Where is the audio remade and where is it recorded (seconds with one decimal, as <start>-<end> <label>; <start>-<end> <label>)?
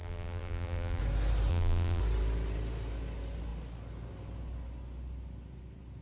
0.0-1.0 remade; 1.0-1.5 recorded; 1.5-2.0 remade; 2.0-6.0 recorded